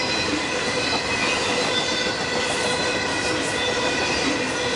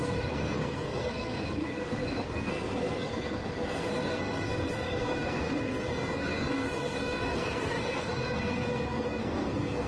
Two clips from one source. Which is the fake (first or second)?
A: second